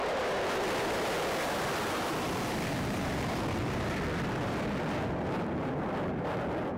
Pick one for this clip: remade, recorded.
remade